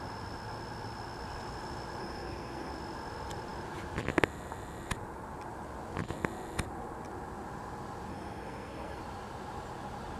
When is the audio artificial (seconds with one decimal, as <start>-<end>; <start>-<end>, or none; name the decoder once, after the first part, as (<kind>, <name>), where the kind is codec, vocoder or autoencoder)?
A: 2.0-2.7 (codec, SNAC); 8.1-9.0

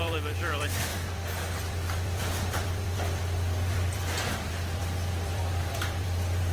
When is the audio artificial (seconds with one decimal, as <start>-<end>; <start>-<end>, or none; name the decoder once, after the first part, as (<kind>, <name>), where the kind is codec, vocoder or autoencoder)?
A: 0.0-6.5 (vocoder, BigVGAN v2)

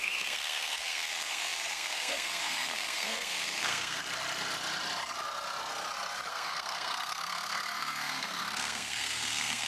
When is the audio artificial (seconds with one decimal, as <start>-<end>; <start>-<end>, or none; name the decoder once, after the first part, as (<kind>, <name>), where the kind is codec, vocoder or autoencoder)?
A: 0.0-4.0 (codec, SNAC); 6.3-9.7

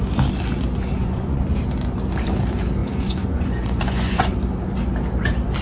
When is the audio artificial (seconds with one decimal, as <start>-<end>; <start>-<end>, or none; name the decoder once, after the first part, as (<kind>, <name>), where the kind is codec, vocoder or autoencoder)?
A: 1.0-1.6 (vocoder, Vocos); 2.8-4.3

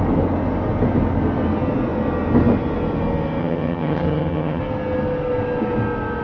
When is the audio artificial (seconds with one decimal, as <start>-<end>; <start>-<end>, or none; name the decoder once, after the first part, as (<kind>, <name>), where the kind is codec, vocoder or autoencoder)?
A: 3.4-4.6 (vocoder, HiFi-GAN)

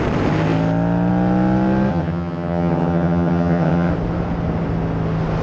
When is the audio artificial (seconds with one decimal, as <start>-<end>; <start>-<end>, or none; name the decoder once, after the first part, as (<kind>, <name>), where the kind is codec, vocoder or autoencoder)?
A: 1.9-3.9 (vocoder, HiFi-GAN)

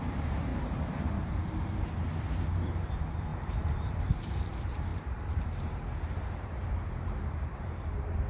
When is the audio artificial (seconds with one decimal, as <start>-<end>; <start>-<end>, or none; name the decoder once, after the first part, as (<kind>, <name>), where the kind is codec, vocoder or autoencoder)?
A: 0.0-0.5 (vocoder, BigVGAN v2); 2.5-8.3

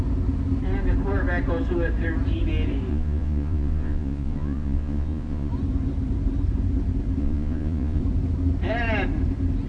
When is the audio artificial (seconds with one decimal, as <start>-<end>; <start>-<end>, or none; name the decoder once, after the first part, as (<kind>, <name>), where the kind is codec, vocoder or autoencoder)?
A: 2.9-5.5 (vocoder, Vocos); 7.2-8.0